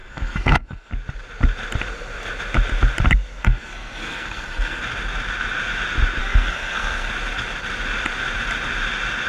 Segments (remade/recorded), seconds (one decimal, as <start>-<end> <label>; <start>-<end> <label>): 0.0-0.9 remade; 0.9-3.4 recorded; 3.4-4.8 remade; 4.8-6.2 recorded; 6.2-7.1 remade; 7.1-9.3 recorded

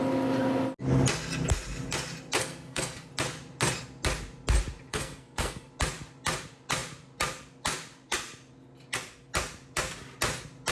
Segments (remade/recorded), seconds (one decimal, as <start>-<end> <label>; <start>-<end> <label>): 0.0-2.4 recorded; 2.4-3.1 remade; 3.1-4.9 recorded; 4.9-5.7 remade; 5.7-10.7 recorded

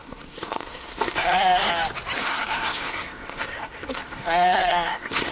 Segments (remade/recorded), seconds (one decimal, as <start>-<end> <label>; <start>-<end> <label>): 0.0-1.7 remade; 1.7-2.2 recorded; 2.2-5.3 remade

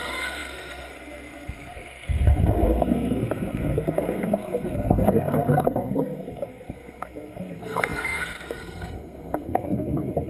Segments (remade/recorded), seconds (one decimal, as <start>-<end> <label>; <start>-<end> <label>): 0.0-10.3 remade

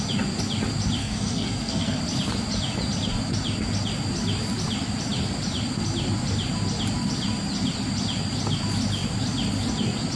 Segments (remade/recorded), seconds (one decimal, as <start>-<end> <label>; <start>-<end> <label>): 0.0-1.0 recorded; 1.0-2.0 remade; 2.0-10.2 recorded

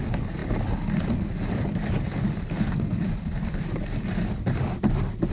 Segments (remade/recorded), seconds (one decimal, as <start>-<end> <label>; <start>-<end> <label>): 0.0-2.5 recorded; 2.5-3.0 remade; 3.0-5.3 recorded

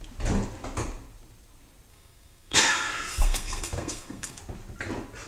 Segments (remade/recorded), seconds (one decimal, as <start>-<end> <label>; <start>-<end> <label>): 0.0-1.9 recorded; 1.9-4.4 remade; 4.4-5.3 recorded

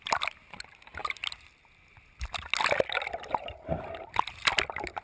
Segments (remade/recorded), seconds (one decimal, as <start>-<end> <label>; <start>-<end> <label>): 0.0-5.0 recorded